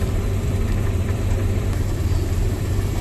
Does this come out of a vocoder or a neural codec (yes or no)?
yes